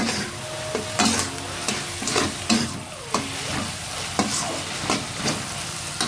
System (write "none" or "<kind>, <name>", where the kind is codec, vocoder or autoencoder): none